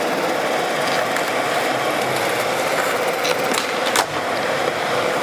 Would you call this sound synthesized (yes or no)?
no